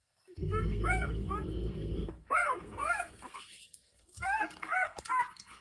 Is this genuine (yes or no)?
no